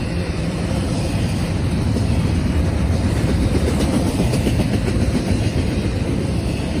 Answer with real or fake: fake